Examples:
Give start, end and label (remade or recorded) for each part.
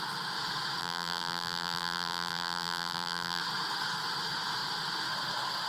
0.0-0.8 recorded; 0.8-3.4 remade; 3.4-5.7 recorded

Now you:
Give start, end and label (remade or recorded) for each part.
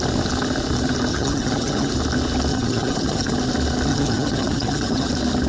0.0-1.1 recorded; 1.1-1.9 remade; 1.9-2.5 recorded; 2.5-3.3 remade; 3.3-3.9 recorded; 3.9-5.1 remade; 5.1-5.5 recorded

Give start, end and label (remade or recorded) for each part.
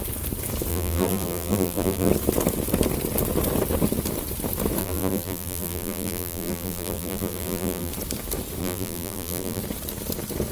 0.0-0.7 recorded; 0.7-2.1 remade; 2.1-4.8 recorded; 4.8-7.9 remade; 7.9-8.6 recorded; 8.6-9.6 remade; 9.6-10.5 recorded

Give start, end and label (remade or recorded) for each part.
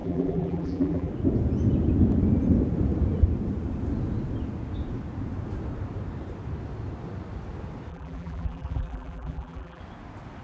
0.0-1.1 remade; 1.1-7.9 recorded; 7.9-9.8 remade; 9.8-10.4 recorded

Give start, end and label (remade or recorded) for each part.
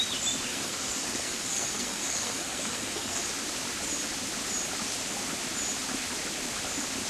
0.0-0.5 recorded; 0.5-3.2 remade; 3.2-7.1 recorded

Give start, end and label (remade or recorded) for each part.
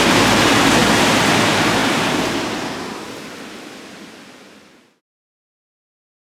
0.0-6.3 recorded